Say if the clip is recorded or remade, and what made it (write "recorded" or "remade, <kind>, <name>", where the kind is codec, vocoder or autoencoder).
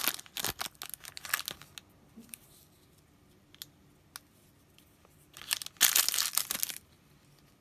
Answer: recorded